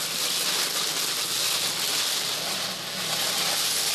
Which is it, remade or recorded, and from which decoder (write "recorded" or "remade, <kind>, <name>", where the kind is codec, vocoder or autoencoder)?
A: recorded